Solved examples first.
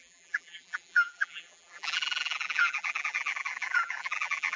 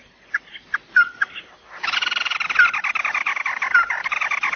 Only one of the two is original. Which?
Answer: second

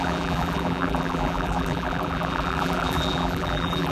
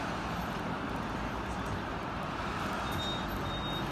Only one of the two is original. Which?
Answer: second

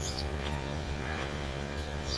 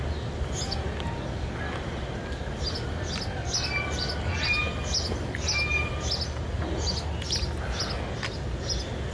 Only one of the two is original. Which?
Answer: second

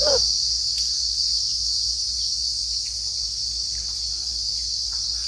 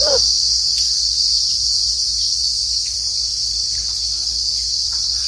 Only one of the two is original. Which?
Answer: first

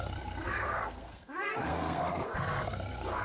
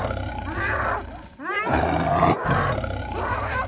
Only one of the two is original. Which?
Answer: second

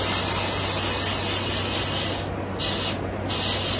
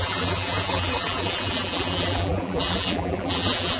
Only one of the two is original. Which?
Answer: first